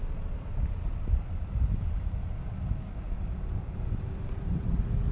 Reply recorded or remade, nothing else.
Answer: recorded